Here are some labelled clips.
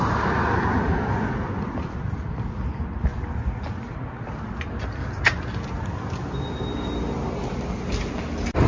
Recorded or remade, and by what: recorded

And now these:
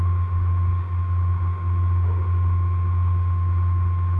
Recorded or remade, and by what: remade, autoencoder, DAC-VAE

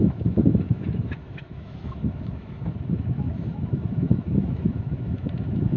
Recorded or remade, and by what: remade, autoencoder, DAC-VAE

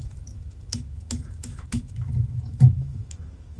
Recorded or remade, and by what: remade, autoencoder, DAC-VAE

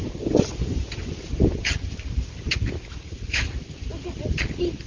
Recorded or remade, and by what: recorded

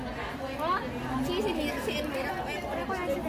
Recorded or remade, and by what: recorded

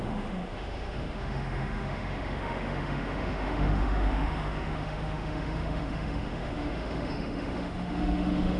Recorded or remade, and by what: remade, autoencoder, DAC-VAE